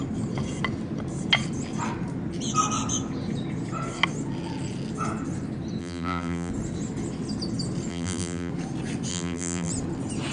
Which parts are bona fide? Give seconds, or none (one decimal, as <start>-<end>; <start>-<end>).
0.0-5.8; 6.5-7.9; 8.5-9.1; 9.7-10.3